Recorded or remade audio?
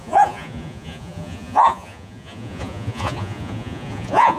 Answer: remade